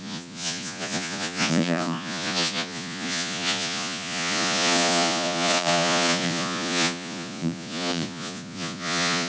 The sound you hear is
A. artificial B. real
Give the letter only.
A